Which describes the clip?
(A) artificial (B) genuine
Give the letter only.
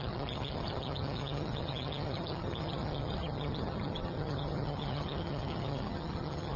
A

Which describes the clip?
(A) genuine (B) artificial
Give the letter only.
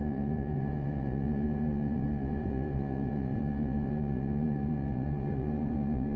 B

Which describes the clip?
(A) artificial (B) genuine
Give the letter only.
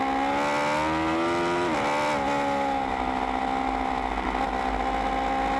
B